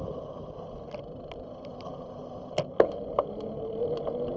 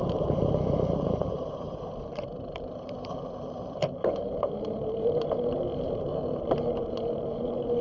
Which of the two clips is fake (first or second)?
second